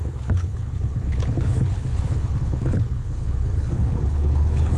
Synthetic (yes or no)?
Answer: yes